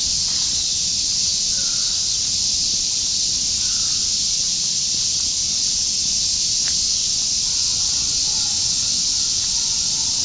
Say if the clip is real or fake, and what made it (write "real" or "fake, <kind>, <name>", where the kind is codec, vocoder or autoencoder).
real